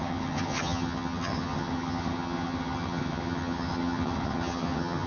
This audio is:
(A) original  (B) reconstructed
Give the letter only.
B